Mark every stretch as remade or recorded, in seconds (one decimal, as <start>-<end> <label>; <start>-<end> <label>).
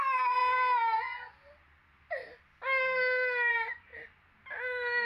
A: 0.0-0.4 remade; 0.4-3.5 recorded; 3.5-3.9 remade; 3.9-5.1 recorded